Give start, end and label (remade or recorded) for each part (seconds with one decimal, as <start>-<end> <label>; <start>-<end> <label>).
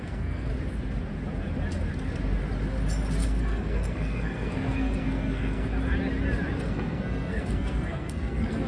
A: 0.0-0.5 remade; 0.5-3.2 recorded; 3.2-5.7 remade; 5.7-6.6 recorded; 6.6-8.7 remade